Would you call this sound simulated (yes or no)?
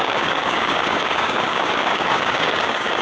yes